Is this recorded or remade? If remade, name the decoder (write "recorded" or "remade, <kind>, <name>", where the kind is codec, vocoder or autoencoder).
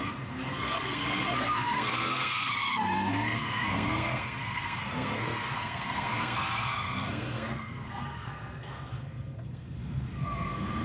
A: remade, codec, SNAC